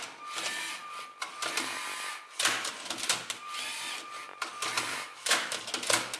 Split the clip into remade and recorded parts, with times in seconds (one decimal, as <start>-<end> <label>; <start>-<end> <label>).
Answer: 0.0-4.9 recorded; 4.9-5.6 remade; 5.6-6.2 recorded